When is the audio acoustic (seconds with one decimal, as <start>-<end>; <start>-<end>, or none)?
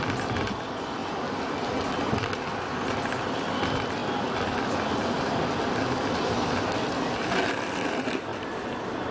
0.0-9.1